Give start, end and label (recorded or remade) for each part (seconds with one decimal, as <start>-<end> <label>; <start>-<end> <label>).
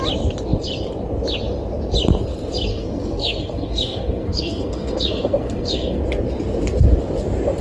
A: 0.0-2.7 recorded; 2.7-6.0 remade; 6.0-7.6 recorded